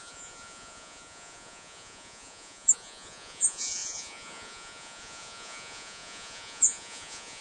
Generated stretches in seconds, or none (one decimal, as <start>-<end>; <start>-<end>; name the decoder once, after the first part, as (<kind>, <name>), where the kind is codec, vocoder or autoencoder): 0.0-7.4 (vocoder, Vocos)